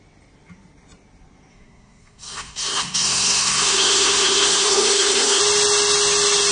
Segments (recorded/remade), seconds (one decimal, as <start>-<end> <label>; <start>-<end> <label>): 0.0-1.5 recorded; 1.5-5.4 remade; 5.4-6.5 recorded